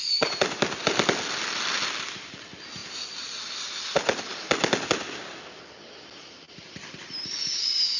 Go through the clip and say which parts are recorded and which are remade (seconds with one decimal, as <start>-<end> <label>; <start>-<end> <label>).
0.0-8.0 recorded